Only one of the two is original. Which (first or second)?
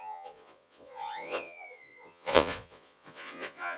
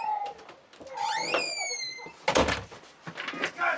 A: second